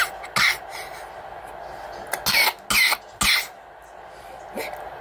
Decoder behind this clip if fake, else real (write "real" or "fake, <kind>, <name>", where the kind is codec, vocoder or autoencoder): real